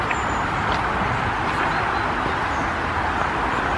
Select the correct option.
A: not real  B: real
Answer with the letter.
B